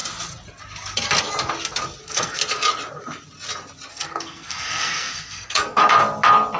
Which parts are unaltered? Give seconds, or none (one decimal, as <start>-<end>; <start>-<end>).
0.0-2.0; 2.4-3.9; 5.8-6.6